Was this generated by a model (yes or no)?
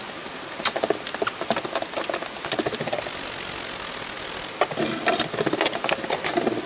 no